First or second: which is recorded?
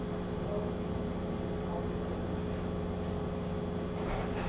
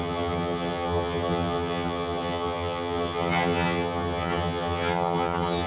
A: first